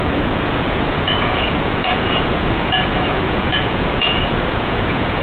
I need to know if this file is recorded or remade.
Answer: remade